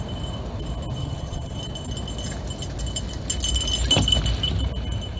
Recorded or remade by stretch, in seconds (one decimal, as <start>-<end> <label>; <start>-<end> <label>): 0.0-1.0 recorded; 1.0-1.6 remade; 1.6-5.2 recorded